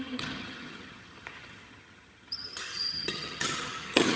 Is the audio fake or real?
fake